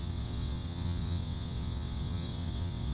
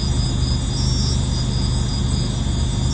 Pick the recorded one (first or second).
second